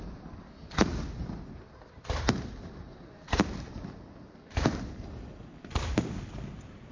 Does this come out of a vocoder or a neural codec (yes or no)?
no